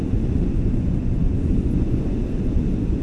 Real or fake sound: fake